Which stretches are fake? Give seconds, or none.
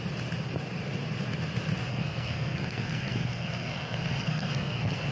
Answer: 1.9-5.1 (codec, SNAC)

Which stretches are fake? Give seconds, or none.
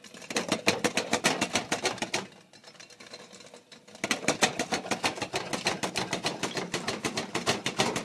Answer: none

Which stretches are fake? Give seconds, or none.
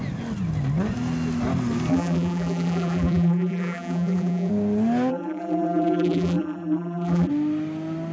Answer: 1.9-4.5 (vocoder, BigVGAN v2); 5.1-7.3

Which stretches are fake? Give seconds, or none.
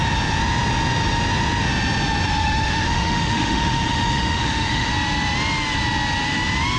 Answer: 2.4-4.9 (autoencoder, DAC-VAE)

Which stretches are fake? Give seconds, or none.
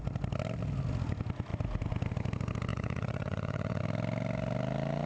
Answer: 2.7-3.8 (vocoder, Vocos)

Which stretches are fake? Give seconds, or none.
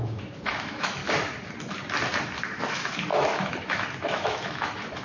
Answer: 0.0-1.0 (autoencoder, DAC-VAE); 2.6-5.0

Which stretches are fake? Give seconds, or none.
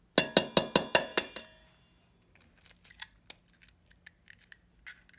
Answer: none